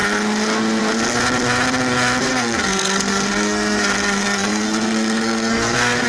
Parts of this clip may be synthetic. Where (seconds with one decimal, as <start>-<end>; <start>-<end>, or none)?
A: 2.3-6.1